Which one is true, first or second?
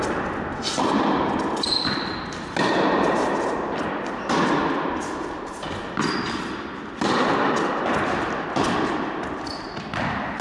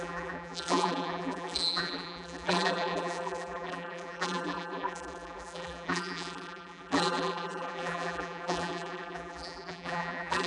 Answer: first